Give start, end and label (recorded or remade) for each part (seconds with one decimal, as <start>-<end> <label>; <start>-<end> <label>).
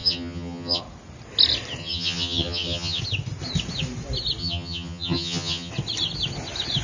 0.0-0.8 remade; 0.8-1.8 recorded; 1.8-3.0 remade; 3.0-4.4 recorded; 4.4-5.7 remade; 5.7-6.8 recorded